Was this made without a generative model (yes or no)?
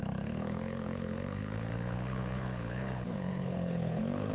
no